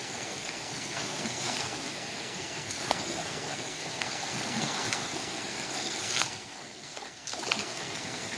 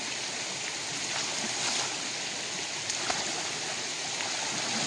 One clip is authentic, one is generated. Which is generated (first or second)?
first